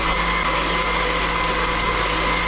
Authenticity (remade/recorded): recorded